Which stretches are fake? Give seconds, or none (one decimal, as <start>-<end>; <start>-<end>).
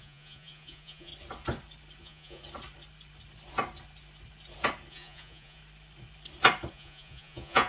0.0-1.1; 2.0-2.4; 4.9-5.6; 6.7-7.7